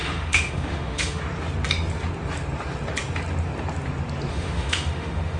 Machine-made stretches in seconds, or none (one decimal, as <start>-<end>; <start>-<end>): 0.0-1.2; 4.3-5.4